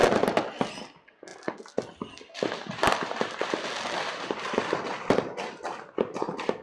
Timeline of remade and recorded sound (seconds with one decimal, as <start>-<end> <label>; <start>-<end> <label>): 0.0-6.6 recorded